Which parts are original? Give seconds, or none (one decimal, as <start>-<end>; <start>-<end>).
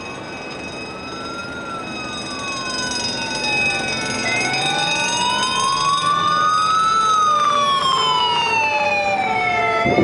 0.0-10.0